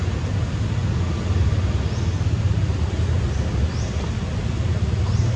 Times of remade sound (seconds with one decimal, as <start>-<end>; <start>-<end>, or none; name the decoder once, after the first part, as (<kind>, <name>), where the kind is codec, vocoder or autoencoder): none